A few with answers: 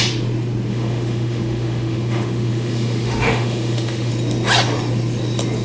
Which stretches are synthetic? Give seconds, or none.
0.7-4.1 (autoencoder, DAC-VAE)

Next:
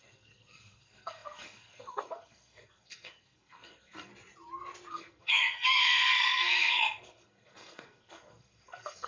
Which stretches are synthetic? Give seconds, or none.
0.0-4.1 (codec, SNAC); 4.9-9.1